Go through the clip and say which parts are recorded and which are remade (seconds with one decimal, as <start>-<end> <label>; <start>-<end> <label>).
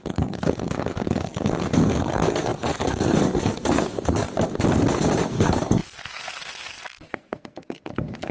0.0-4.3 remade; 4.3-5.3 recorded; 5.3-8.3 remade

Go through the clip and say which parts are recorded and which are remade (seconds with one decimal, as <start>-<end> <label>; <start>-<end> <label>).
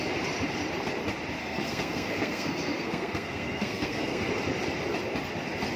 0.0-1.4 recorded; 1.4-4.2 remade; 4.2-5.8 recorded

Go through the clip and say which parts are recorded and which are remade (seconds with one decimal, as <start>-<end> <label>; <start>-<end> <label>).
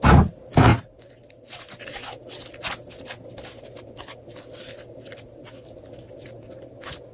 0.0-7.1 recorded